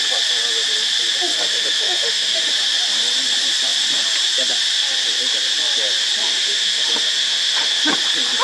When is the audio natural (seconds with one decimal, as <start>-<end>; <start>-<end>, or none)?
0.0-1.3; 2.5-6.2; 7.9-8.4